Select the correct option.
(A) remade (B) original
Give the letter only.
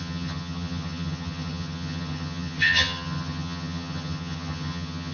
A